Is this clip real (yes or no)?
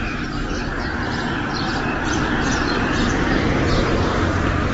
yes